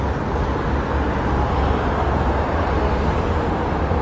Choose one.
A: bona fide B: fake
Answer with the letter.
A